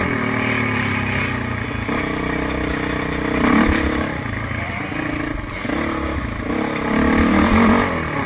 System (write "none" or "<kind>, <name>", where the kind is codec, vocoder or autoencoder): none